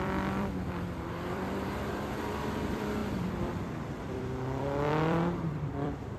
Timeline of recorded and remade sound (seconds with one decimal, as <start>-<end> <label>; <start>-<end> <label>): 0.0-6.2 remade

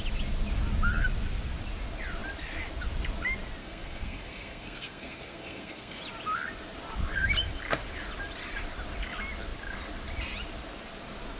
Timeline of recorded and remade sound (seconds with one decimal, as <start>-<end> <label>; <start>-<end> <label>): 0.0-3.6 recorded; 3.6-6.0 remade; 6.0-11.4 recorded

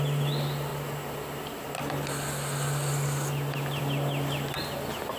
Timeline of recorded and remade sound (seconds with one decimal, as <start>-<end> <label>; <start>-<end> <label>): 0.0-5.2 recorded

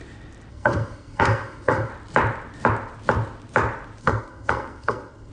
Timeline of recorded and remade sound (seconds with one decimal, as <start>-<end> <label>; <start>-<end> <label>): 0.0-0.5 recorded; 0.5-1.9 remade; 1.9-4.0 recorded; 4.0-5.3 remade

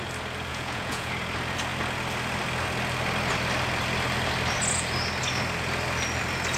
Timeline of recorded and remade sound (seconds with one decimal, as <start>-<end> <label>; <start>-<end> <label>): 0.0-0.5 recorded; 0.5-1.1 remade; 1.1-6.6 recorded

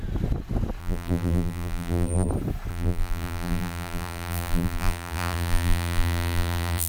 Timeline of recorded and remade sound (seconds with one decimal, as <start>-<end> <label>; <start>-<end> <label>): 0.0-0.8 recorded; 0.8-2.3 remade; 2.3-2.7 recorded; 2.7-6.9 remade